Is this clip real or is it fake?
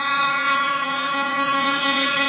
fake